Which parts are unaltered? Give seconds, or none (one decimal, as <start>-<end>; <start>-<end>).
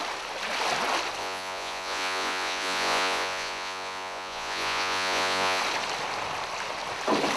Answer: 0.0-1.2; 5.6-7.4